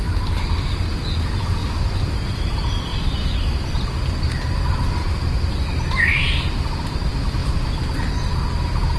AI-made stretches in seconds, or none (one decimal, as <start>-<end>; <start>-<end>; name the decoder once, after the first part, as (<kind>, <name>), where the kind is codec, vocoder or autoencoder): none